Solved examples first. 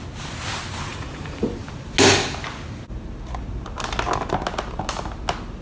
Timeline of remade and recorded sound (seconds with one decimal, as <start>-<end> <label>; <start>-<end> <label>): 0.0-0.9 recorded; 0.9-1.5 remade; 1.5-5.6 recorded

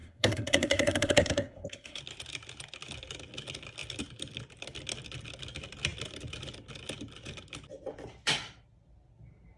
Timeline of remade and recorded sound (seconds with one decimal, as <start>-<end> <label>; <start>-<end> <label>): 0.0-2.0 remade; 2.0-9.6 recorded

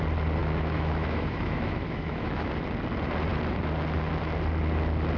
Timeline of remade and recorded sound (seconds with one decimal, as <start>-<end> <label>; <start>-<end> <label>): 0.0-0.4 recorded; 0.4-2.5 remade; 2.5-5.2 recorded

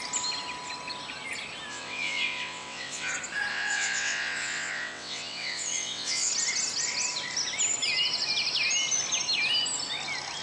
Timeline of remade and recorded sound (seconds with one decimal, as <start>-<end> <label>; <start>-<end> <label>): 0.0-1.7 recorded; 1.7-3.1 remade; 3.1-3.5 recorded; 3.5-6.3 remade; 6.3-10.4 recorded